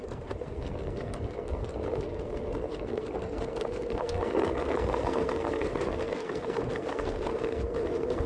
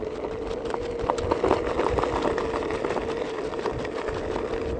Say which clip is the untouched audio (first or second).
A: second